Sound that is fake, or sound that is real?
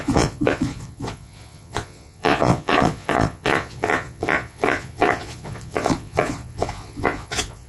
fake